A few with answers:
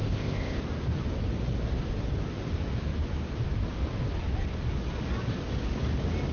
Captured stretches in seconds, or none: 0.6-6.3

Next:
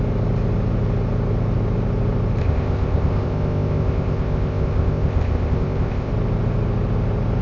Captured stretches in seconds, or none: 0.0-2.4; 6.1-7.4

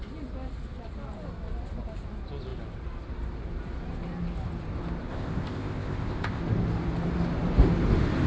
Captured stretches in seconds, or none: 0.0-5.1; 6.4-8.3